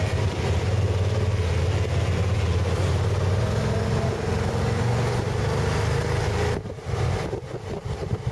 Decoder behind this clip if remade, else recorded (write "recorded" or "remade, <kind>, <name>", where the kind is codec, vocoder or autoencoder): recorded